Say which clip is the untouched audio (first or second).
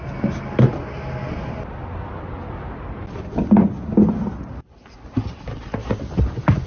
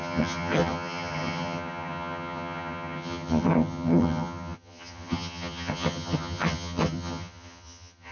first